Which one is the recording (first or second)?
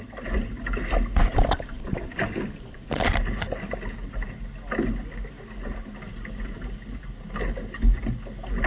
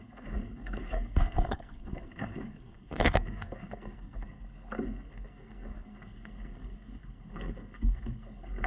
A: first